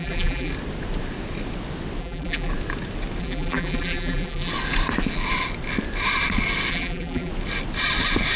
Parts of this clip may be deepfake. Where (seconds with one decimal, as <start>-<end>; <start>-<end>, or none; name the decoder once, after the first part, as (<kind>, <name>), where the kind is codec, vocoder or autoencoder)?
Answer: 0.0-0.5 (vocoder, BigVGAN v2); 2.0-2.5; 3.2-4.5; 6.7-7.3